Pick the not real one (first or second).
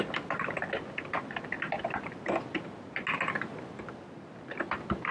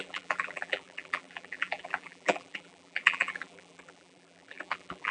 second